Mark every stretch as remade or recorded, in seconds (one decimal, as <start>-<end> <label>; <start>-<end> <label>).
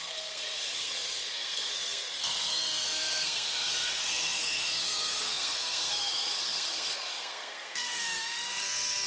0.0-9.1 remade